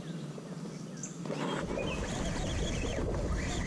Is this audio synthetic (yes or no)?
no